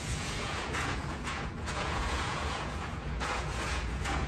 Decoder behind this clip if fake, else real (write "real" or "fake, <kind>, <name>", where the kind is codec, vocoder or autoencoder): fake, vocoder, Vocos